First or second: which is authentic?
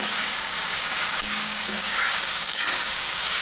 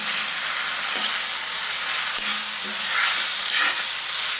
second